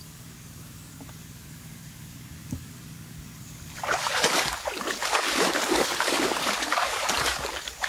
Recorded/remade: remade